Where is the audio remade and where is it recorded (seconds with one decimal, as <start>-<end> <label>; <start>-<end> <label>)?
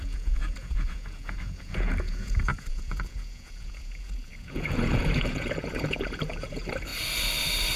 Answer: 0.0-6.9 remade; 6.9-7.8 recorded